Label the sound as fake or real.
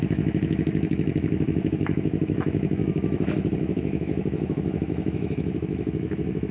fake